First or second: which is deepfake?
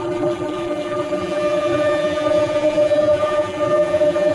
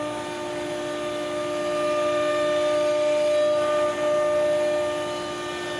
first